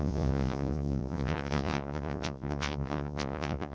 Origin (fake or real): fake